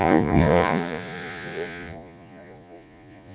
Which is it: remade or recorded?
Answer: remade